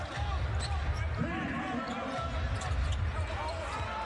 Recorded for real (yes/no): yes